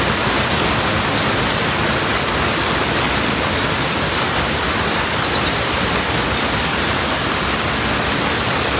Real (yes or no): yes